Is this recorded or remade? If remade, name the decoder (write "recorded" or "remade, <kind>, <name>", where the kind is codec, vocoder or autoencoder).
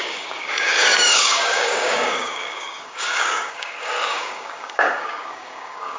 remade, codec, DAC